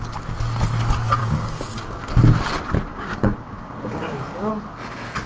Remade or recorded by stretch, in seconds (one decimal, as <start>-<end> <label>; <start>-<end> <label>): 0.0-1.2 recorded; 1.2-2.1 remade; 2.1-2.9 recorded; 2.9-4.5 remade; 4.5-5.3 recorded